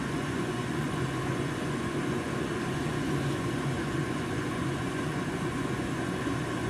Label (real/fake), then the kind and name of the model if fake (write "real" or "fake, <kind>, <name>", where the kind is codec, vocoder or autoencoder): fake, vocoder, Vocos